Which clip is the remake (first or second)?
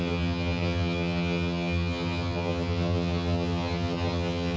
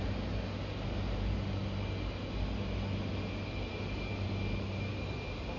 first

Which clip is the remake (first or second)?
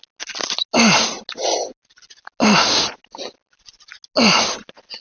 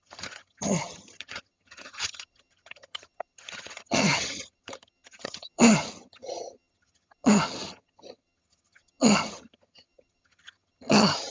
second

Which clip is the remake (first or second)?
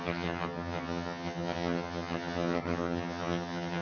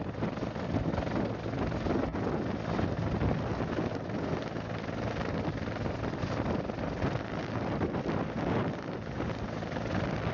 first